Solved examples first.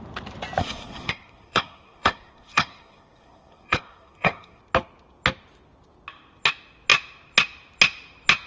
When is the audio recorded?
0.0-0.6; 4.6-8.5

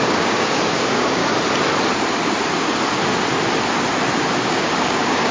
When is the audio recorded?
1.2-4.4

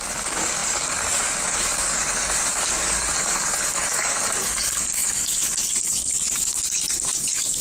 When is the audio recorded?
none

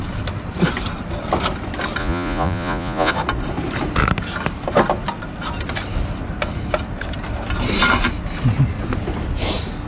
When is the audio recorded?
0.0-2.0; 3.1-9.9